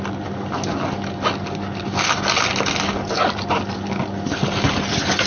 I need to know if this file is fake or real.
real